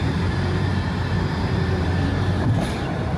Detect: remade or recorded remade